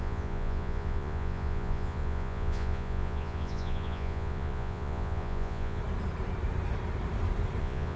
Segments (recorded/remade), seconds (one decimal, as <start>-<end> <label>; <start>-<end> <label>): 0.0-5.8 remade; 5.8-7.6 recorded; 7.6-8.0 remade